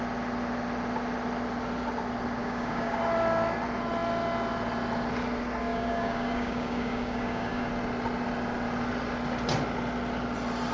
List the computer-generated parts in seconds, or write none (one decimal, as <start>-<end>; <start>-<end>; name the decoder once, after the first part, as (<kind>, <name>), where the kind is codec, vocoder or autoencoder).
2.4-3.0 (codec, DAC); 5.7-7.7